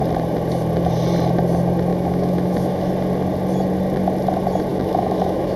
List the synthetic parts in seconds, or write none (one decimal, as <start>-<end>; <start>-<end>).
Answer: 1.9-2.9; 4.7-5.6